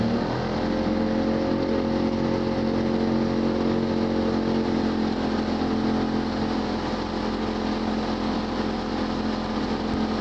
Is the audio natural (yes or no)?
yes